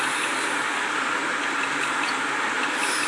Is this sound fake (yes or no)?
no